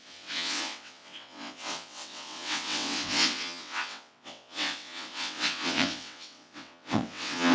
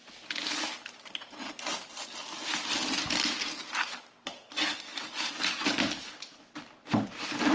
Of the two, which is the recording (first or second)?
second